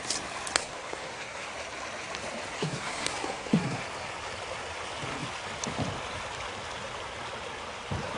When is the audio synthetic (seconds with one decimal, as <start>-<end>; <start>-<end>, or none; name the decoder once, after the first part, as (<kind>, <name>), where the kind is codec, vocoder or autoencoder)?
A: 0.6-1.5 (codec, SNAC); 2.6-3.8